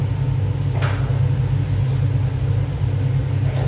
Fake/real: real